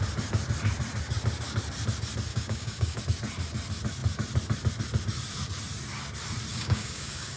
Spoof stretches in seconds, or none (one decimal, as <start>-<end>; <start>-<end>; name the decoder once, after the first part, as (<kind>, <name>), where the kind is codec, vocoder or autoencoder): 2.3-3.0 (codec, DAC); 6.5-7.4